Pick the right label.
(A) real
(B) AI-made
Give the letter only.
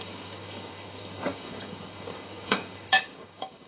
B